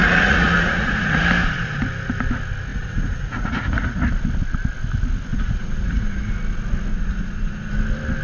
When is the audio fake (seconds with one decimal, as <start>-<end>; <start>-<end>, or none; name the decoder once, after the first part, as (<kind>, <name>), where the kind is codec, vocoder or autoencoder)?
0.0-1.2 (vocoder, Vocos); 2.7-4.0; 5.3-6.3; 6.9-7.7